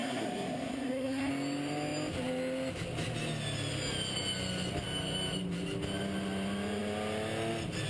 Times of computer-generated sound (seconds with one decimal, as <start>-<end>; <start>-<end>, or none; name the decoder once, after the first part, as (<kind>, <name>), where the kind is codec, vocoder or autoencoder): 0.0-1.3 (codec, SNAC)